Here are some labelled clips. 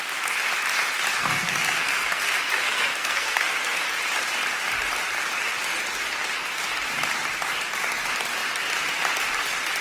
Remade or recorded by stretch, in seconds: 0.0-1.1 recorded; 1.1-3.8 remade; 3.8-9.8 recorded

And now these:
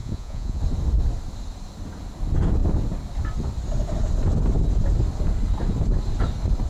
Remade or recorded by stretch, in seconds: 0.0-0.6 remade; 0.6-6.7 recorded

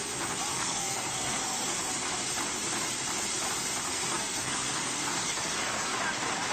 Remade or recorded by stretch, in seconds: 0.0-0.5 recorded; 0.5-1.9 remade; 1.9-3.9 recorded; 3.9-5.9 remade; 5.9-6.5 recorded